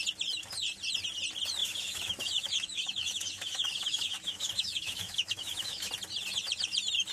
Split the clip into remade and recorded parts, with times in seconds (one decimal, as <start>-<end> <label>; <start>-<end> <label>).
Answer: 0.0-1.6 recorded; 1.6-5.9 remade; 5.9-7.1 recorded